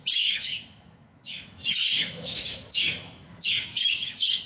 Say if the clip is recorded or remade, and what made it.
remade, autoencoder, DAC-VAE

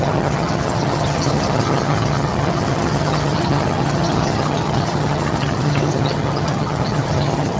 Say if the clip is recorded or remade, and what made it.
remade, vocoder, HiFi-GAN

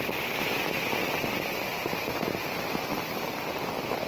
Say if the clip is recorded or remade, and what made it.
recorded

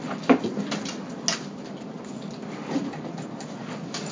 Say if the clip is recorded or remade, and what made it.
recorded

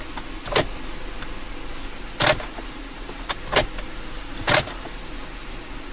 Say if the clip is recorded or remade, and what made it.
recorded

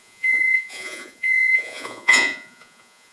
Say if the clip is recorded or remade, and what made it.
remade, vocoder, Vocos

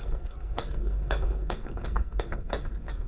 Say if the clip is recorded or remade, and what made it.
remade, codec, SNAC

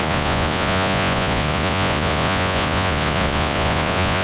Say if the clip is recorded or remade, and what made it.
remade, vocoder, Vocos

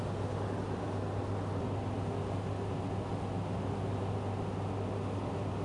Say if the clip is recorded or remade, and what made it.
recorded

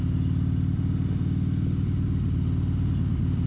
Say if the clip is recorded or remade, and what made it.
recorded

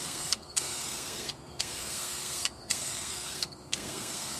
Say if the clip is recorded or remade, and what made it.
remade, codec, SNAC